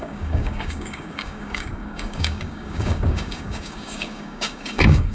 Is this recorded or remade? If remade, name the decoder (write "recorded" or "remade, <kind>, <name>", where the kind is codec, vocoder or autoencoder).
remade, codec, DAC